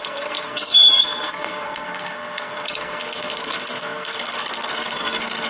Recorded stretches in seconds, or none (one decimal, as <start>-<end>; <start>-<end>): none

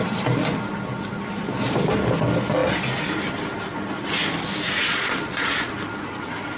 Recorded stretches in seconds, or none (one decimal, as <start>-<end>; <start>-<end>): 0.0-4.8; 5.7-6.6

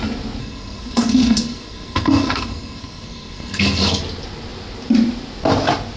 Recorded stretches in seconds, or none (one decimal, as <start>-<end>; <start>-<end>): 0.0-0.4; 4.0-6.0

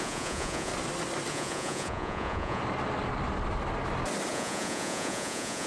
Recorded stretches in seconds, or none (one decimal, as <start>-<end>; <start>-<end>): 0.7-1.3; 2.6-4.3

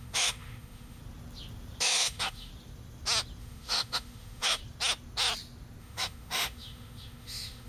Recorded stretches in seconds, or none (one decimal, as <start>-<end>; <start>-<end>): 1.0-1.8; 2.5-3.4; 4.6-5.8

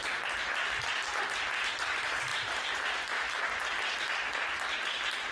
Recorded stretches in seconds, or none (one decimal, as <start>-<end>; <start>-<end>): 0.0-2.3; 3.7-5.3